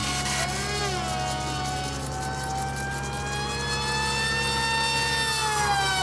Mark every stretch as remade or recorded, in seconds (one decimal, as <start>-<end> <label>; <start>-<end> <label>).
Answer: 0.0-6.0 recorded